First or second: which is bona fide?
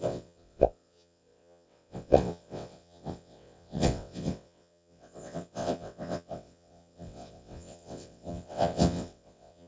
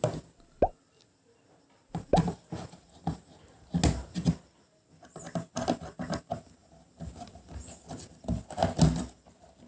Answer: second